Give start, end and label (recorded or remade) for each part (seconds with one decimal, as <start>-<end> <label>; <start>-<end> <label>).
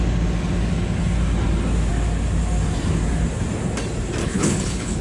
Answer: 0.0-4.2 recorded; 4.2-5.0 remade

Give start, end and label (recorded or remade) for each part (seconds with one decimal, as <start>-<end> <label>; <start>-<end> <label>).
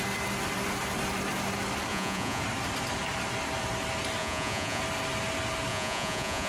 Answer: 0.0-1.9 recorded; 1.9-2.4 remade; 2.4-4.2 recorded; 4.2-4.8 remade; 4.8-5.7 recorded; 5.7-6.5 remade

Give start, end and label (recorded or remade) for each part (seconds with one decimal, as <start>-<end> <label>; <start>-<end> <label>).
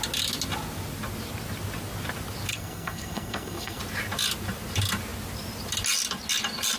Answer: 0.0-2.5 recorded; 2.5-3.8 remade; 3.8-6.8 recorded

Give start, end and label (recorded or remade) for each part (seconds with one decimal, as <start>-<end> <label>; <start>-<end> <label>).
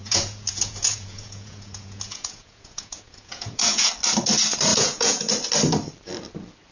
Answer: 0.0-3.9 remade; 3.9-4.7 recorded; 4.7-5.3 remade; 5.3-6.7 recorded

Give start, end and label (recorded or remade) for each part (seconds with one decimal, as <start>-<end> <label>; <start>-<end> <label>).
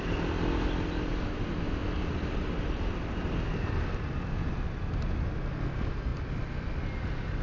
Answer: 0.0-7.4 recorded